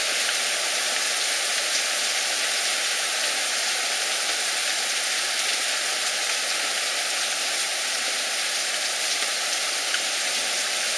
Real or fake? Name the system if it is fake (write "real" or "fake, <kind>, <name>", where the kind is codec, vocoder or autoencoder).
real